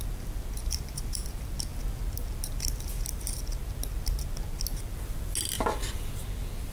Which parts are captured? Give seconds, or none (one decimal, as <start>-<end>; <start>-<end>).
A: 0.0-6.7